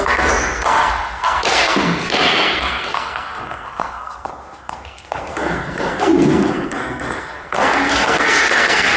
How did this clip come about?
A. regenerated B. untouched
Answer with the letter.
A